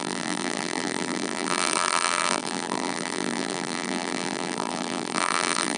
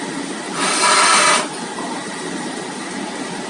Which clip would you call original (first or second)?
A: second